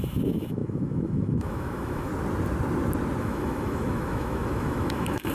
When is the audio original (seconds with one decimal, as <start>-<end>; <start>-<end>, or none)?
2.1-3.2